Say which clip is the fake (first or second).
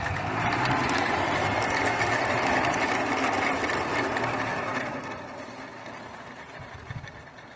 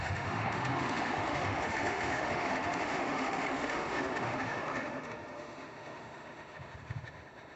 second